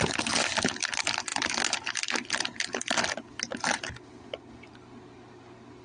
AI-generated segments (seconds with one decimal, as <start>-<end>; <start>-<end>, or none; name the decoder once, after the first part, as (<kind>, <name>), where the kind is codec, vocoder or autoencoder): none